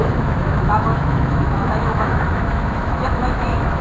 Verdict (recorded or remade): remade